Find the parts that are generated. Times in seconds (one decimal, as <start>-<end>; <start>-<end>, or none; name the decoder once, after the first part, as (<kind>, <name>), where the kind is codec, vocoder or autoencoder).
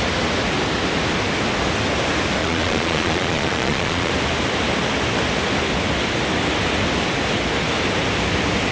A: 2.4-4.1 (vocoder, Vocos)